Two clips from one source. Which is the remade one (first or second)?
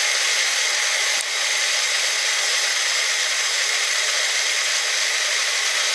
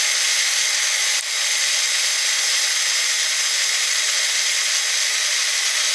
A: first